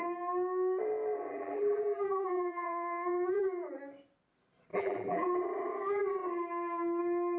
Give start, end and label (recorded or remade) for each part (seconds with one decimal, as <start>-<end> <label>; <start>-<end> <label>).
0.0-1.3 recorded; 1.3-3.8 remade; 3.8-4.7 recorded; 4.7-5.3 remade; 5.3-7.4 recorded